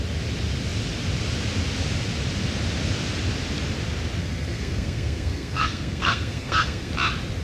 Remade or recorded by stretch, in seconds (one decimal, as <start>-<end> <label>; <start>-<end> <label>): 0.0-4.2 recorded; 4.2-6.9 remade; 6.9-7.4 recorded